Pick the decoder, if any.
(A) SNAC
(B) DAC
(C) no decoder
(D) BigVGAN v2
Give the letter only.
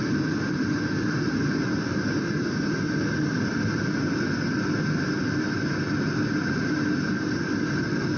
C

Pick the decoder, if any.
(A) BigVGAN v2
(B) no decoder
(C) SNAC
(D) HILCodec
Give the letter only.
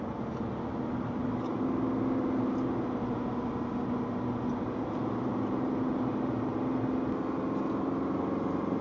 B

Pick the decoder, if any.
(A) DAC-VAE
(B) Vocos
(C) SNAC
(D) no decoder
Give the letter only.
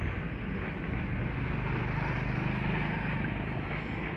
D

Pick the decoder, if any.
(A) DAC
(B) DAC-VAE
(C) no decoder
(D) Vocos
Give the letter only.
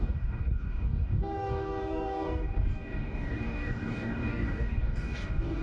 A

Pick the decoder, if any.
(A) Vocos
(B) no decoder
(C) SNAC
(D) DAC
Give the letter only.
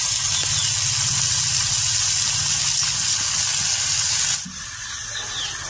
B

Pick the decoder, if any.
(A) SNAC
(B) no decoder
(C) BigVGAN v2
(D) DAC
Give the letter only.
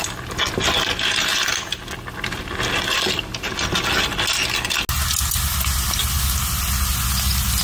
B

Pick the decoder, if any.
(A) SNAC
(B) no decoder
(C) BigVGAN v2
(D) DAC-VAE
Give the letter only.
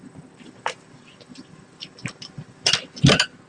B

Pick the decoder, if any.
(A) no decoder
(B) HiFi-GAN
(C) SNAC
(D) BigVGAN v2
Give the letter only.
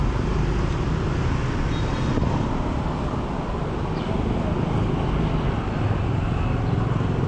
A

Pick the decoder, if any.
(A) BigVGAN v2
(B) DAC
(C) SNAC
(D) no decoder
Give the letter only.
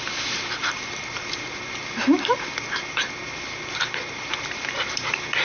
A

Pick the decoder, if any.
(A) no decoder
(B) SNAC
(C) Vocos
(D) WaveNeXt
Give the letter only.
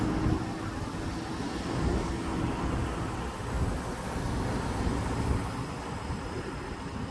A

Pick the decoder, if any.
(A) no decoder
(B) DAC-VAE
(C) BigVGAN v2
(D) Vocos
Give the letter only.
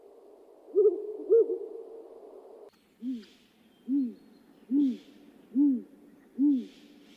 A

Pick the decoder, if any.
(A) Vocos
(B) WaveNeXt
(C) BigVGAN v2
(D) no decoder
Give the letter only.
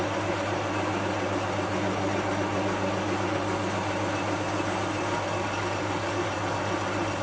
D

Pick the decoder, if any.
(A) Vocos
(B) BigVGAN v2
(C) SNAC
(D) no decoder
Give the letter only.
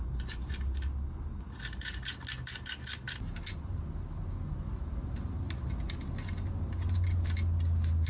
D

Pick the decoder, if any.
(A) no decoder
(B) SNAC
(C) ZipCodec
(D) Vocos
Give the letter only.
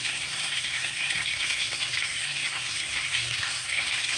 B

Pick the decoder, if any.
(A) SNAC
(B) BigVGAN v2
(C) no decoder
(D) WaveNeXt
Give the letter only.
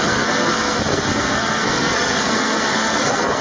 A